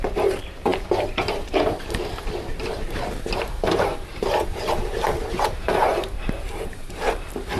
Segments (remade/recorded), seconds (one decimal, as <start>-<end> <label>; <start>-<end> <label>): 0.0-7.6 remade